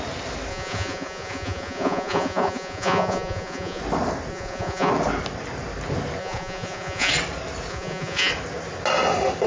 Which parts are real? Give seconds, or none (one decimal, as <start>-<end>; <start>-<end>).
0.0-0.5; 3.8-4.3; 4.9-6.2; 7.1-7.7; 8.3-9.5